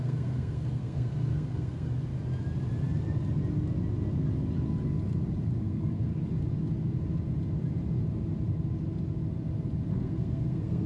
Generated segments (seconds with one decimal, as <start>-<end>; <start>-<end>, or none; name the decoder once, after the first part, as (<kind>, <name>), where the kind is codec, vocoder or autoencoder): 0.0-2.1 (codec, SNAC); 5.6-6.1; 9.9-10.9